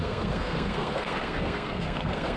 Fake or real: fake